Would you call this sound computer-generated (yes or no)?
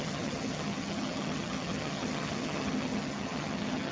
yes